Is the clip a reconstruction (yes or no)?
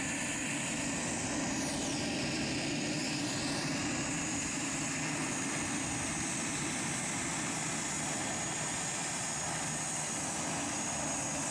no